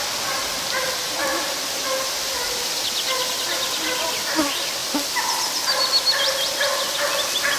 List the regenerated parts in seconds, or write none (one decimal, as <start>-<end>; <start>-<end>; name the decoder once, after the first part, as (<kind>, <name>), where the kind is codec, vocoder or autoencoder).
none